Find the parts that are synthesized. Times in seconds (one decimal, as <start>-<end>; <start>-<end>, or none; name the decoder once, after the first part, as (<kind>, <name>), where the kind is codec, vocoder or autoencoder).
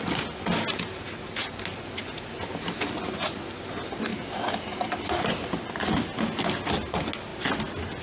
none